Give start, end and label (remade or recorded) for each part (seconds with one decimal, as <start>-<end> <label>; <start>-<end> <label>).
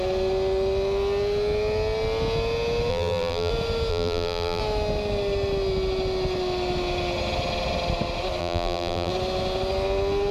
0.0-2.9 recorded; 2.9-3.5 remade; 3.5-3.9 recorded; 3.9-4.6 remade; 4.6-8.4 recorded; 8.4-9.1 remade; 9.1-10.3 recorded